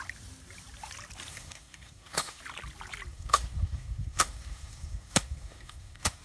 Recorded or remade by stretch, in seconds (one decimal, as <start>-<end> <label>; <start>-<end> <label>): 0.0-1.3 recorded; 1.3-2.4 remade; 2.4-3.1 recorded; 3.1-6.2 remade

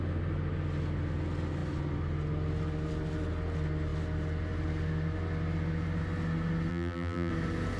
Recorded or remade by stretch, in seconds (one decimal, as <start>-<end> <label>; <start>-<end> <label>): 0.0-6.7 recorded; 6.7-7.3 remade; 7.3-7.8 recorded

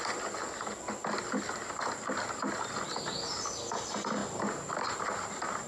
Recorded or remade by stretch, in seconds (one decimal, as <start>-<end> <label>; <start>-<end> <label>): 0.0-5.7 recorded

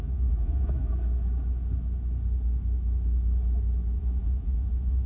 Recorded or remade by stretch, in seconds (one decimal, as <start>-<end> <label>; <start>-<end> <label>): 0.0-0.9 remade; 0.9-4.0 recorded; 4.0-5.1 remade